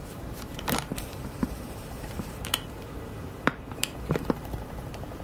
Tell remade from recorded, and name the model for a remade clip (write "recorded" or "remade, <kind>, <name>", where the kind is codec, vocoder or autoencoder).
remade, vocoder, BigVGAN v2